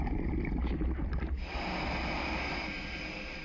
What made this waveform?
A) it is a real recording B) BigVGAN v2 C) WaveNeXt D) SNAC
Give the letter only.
A